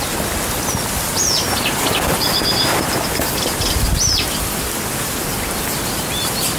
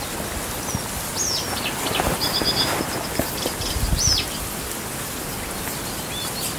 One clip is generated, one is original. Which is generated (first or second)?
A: first